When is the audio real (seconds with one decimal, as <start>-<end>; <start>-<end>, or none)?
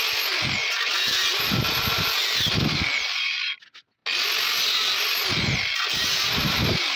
0.0-0.6; 1.5-6.0